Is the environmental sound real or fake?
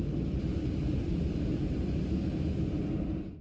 real